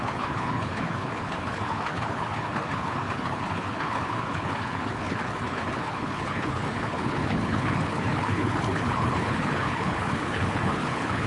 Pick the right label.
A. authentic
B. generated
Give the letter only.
B